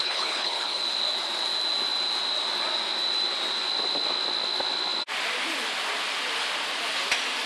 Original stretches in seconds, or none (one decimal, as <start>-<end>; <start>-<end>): 0.8-7.5